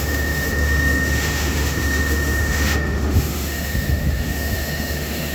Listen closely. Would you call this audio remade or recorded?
remade